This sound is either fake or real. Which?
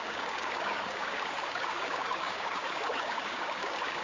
fake